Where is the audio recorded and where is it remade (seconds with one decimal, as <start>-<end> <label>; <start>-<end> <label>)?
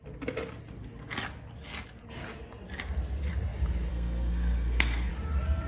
0.0-3.9 recorded; 3.9-5.1 remade; 5.1-5.7 recorded